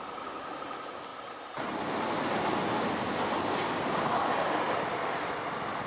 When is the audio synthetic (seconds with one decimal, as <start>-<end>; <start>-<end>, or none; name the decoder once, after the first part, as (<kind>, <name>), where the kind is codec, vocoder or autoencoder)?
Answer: none